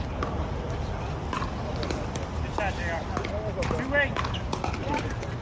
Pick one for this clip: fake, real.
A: real